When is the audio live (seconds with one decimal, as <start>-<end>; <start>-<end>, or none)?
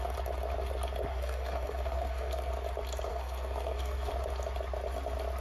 0.0-1.1; 2.5-3.1; 4.1-5.4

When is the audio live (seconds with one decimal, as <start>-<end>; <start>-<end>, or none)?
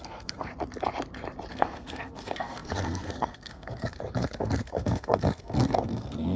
0.5-1.5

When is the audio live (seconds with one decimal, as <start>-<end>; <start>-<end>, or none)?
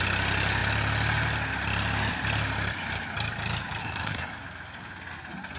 0.0-3.8; 4.3-5.6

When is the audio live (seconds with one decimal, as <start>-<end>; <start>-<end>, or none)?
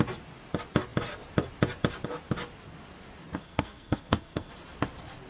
0.0-3.4; 4.5-5.3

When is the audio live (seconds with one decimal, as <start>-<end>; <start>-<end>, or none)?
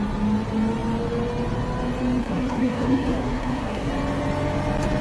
0.0-2.2; 3.9-5.0